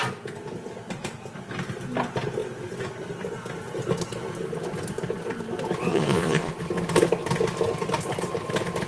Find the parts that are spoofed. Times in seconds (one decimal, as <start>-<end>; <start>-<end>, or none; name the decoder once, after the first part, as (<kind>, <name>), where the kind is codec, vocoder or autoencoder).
5.9-6.5 (vocoder, Vocos)